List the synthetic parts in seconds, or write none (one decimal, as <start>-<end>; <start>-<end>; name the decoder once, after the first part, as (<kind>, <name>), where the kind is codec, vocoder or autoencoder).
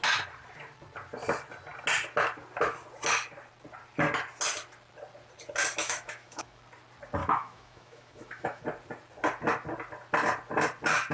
5.8-6.6 (autoencoder, DAC-VAE); 7.2-8.6